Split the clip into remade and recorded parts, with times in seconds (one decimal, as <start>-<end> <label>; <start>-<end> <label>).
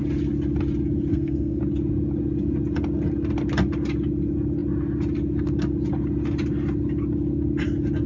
0.0-1.1 recorded; 1.1-1.6 remade; 1.6-8.1 recorded